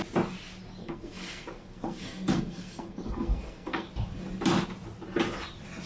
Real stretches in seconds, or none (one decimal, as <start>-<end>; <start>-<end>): 0.0-0.8; 3.9-5.9

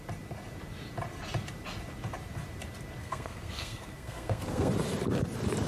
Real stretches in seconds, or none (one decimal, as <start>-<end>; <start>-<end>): 0.0-3.0; 4.7-5.7

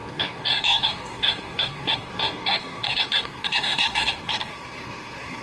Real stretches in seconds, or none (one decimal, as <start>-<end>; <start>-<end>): none

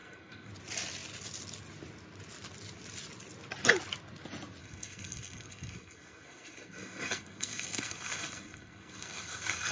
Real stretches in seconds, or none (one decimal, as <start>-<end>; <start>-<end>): 0.5-4.6

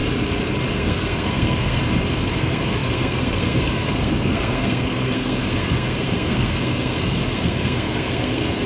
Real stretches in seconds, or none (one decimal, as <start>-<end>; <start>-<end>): 0.0-0.7; 1.8-2.3

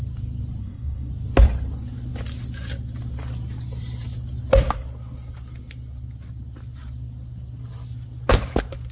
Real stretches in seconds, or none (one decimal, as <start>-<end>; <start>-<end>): 0.0-0.6; 1.1-8.9